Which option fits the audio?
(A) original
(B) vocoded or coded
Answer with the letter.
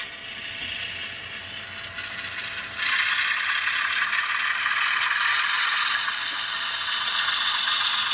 A